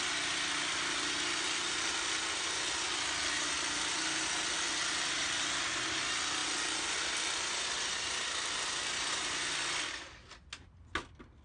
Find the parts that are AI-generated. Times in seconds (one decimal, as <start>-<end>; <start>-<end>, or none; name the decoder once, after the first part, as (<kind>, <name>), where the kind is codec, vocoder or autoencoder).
none